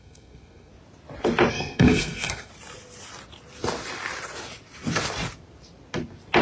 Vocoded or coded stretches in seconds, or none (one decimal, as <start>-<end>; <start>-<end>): 0.0-0.7; 1.5-2.5